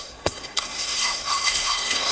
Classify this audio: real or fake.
fake